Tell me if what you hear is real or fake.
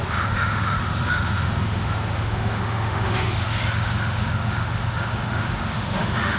fake